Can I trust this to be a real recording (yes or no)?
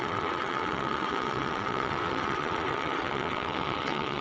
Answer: no